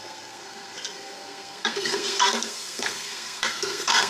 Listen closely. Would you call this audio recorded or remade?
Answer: remade